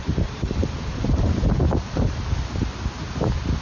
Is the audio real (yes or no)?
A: yes